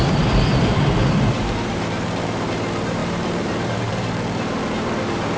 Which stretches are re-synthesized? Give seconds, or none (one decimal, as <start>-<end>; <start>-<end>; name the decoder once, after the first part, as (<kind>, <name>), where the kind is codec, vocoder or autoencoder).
0.0-5.4 (vocoder, BigVGAN v2)